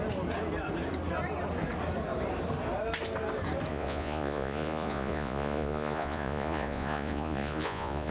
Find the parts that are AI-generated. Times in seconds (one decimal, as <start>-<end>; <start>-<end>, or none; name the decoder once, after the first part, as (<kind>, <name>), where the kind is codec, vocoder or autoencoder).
3.7-8.1 (vocoder, Vocos)